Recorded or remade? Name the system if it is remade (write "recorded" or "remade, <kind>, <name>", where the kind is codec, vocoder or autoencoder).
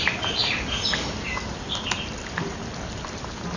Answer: recorded